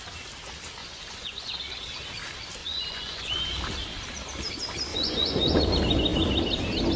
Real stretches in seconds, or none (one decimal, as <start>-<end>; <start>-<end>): 0.0-0.8; 1.5-2.6; 3.4-4.9; 5.6-7.0